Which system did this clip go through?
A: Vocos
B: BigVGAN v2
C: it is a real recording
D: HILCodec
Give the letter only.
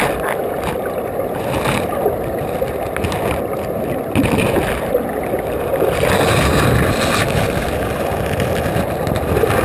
C